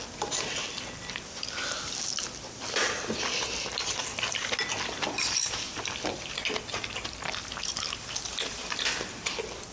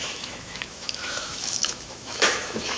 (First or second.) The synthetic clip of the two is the second